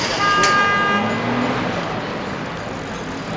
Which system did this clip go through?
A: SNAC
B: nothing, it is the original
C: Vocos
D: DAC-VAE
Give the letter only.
B